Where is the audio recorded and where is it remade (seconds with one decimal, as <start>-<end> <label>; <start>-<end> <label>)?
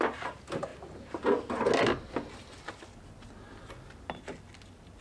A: 0.0-5.0 recorded